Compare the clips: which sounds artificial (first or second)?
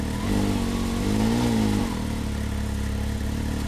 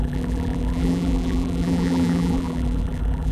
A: second